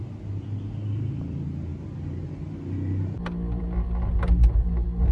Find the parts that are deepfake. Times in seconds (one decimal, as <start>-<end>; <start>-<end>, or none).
none